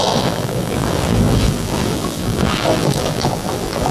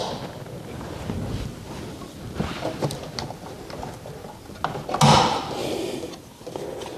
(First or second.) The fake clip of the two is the first